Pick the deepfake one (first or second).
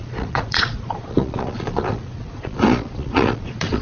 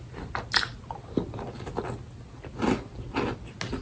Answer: first